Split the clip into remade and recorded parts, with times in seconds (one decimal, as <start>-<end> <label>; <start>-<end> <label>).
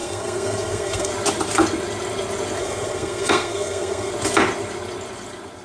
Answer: 0.0-1.1 remade; 1.1-2.6 recorded; 2.6-4.1 remade; 4.1-5.6 recorded